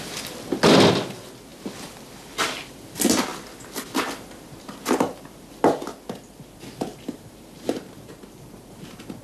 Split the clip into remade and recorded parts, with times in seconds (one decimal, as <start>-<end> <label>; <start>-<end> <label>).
0.0-6.9 recorded; 6.9-8.1 remade; 8.1-9.2 recorded